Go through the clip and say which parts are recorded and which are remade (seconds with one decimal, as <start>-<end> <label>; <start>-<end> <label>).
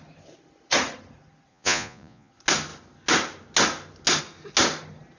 0.0-1.5 recorded; 1.5-2.3 remade; 2.3-5.2 recorded